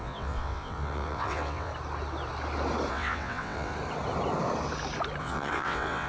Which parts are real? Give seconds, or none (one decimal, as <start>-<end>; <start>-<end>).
1.7-2.9; 3.7-5.2

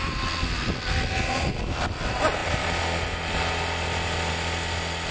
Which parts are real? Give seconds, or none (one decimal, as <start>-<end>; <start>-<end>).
0.0-5.1

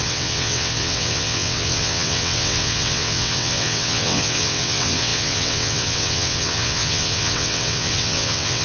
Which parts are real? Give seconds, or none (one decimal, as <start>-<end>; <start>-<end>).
none

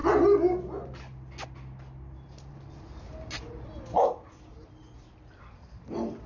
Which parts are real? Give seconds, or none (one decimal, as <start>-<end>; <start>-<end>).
0.0-6.3